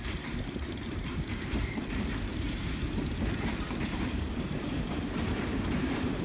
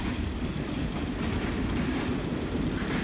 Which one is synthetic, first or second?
first